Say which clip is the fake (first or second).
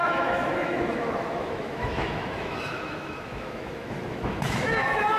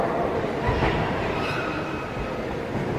first